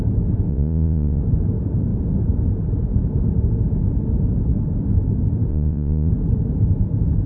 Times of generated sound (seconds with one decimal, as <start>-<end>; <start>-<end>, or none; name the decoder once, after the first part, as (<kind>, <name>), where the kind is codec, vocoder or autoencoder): 0.5-1.2 (vocoder, Vocos); 5.5-6.1

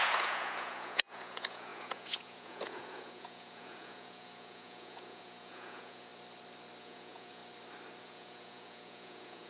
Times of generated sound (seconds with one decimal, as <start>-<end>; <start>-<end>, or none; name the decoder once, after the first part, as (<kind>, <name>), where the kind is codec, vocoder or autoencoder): 0.0-6.1 (vocoder, Vocos); 6.8-7.4; 8.0-9.5

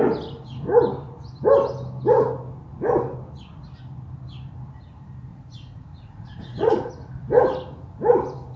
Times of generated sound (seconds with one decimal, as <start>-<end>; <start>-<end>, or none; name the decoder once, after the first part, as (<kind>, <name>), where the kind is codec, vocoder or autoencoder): 5.3-6.9 (vocoder, Vocos)

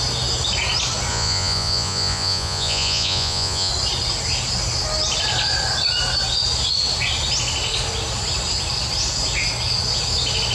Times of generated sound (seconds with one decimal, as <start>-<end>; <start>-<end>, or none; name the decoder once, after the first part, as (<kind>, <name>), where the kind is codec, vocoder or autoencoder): 1.1-3.7 (vocoder, Vocos)

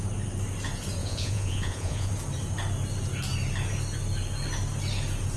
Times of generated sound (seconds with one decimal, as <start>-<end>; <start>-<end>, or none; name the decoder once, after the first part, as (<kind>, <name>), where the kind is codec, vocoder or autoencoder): 1.0-2.1 (vocoder, Vocos)

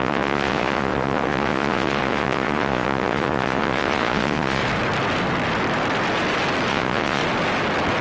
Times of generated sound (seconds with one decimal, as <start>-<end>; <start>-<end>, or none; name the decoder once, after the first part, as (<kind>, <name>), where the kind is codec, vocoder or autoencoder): 0.0-4.6 (vocoder, Vocos); 6.7-7.2

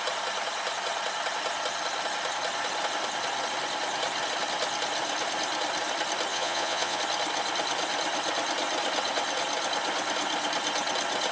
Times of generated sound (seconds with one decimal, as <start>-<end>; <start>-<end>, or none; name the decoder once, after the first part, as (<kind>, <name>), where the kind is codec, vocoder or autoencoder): 6.3-7.0 (vocoder, Vocos)

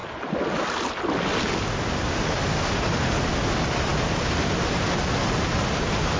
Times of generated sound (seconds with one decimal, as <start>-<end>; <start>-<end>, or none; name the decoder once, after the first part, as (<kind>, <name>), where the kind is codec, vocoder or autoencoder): none